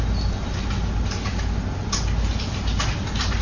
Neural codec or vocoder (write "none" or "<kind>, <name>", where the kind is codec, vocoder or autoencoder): none